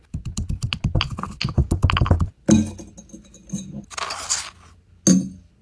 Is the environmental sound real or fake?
real